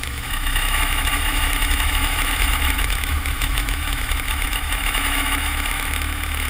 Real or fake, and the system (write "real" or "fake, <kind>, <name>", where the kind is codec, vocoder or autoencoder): fake, autoencoder, DAC-VAE